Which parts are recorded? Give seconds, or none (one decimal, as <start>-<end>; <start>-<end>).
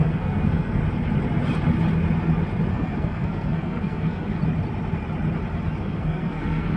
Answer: 0.8-2.7; 4.4-5.8